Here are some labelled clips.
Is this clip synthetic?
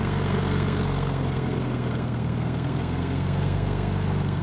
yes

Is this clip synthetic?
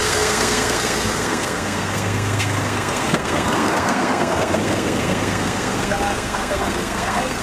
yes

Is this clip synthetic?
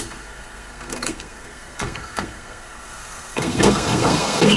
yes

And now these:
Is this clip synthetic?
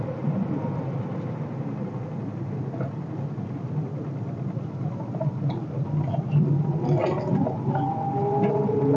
no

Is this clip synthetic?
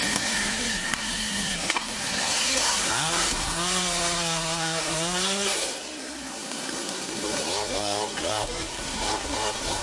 yes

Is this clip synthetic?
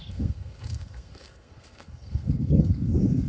yes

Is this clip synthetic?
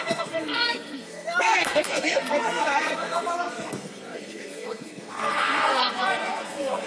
yes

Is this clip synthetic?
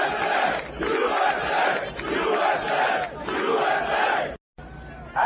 no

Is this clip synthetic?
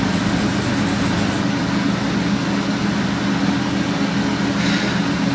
no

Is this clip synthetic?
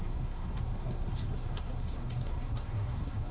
yes